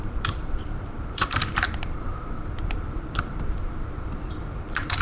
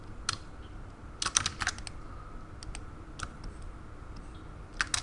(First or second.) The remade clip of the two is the first